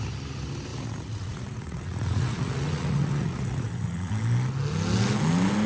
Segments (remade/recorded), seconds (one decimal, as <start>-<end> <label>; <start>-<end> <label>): 0.0-0.7 recorded; 0.7-4.1 remade; 4.1-5.7 recorded